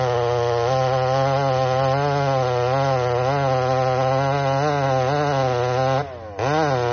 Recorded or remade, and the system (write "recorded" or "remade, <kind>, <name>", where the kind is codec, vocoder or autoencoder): recorded